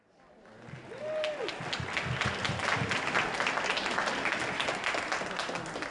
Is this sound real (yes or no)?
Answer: yes